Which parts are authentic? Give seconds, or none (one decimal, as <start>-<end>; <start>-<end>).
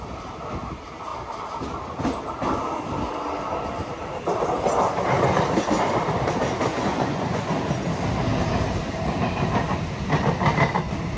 0.0-6.7; 7.5-11.2